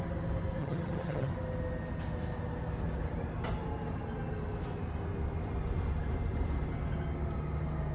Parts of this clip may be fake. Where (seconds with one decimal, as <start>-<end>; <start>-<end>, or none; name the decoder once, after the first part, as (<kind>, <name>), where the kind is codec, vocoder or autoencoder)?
0.6-1.3 (vocoder, HiFi-GAN)